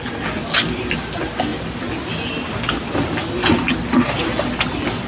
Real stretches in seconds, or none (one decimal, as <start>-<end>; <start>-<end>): 0.0-5.1